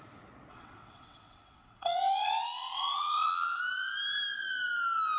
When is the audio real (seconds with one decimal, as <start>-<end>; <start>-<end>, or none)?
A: 0.0-0.5; 3.6-5.2